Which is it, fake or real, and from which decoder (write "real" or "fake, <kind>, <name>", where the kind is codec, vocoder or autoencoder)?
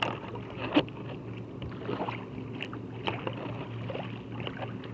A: real